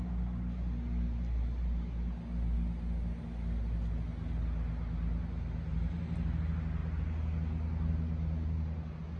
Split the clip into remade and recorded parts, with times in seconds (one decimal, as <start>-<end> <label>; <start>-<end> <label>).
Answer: 0.0-9.2 recorded